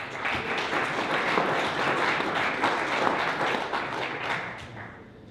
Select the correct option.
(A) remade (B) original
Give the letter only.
B